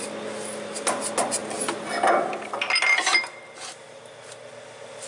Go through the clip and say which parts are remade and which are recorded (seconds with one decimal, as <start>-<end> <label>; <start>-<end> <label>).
0.0-5.1 recorded